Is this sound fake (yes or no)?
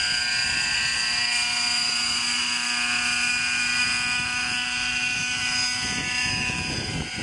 no